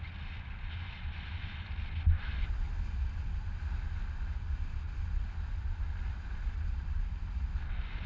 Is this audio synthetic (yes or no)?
no